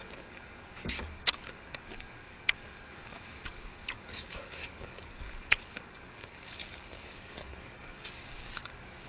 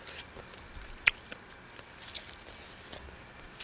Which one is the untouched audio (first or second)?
second